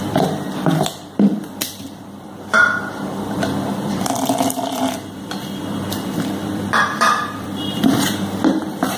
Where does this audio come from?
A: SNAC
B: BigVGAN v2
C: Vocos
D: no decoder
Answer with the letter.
B